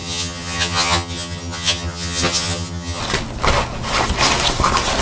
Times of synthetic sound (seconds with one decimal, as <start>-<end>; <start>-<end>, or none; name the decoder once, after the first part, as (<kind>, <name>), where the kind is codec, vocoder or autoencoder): 0.0-3.0 (vocoder, HiFi-GAN)